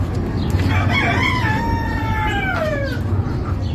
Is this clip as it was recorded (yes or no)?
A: yes